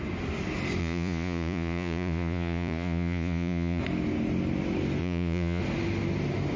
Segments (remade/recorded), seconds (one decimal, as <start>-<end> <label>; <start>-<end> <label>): 0.0-0.8 recorded; 0.8-3.8 remade; 3.8-5.0 recorded; 5.0-5.6 remade; 5.6-6.6 recorded